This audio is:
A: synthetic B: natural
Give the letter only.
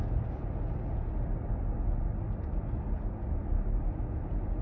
B